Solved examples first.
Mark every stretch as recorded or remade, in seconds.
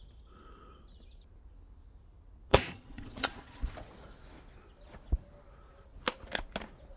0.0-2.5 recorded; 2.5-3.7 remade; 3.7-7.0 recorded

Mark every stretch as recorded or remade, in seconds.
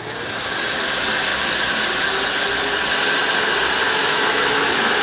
0.0-3.8 recorded; 3.8-5.0 remade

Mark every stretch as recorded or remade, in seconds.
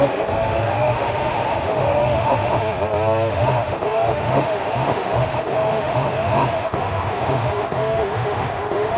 0.0-2.6 remade; 2.6-3.3 recorded; 3.3-9.0 remade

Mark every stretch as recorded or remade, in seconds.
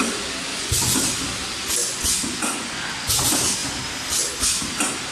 0.0-0.5 recorded; 0.5-1.0 remade; 1.0-1.8 recorded; 1.8-3.1 remade; 3.1-5.1 recorded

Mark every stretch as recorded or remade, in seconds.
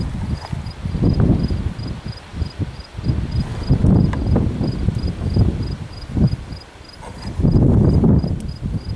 0.0-9.0 recorded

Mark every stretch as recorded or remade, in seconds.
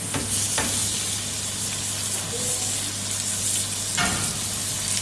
0.0-5.0 recorded